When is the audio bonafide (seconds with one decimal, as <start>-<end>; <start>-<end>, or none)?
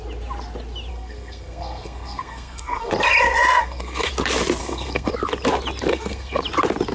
0.0-0.9; 2.9-3.6; 4.1-4.6; 5.1-5.9; 6.4-6.9